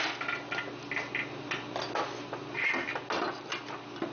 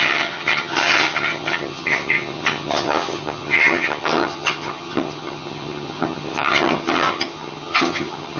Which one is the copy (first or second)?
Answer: second